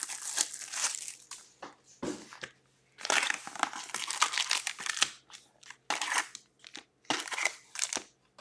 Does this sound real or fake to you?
real